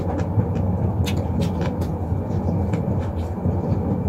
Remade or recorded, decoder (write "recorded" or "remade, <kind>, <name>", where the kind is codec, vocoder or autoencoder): recorded